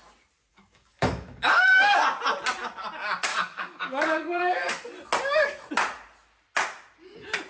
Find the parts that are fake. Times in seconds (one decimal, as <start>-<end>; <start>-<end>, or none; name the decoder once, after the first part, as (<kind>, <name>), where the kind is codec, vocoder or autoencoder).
0.5-2.0 (codec, DAC); 3.3-4.7